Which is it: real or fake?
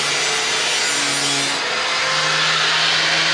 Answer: real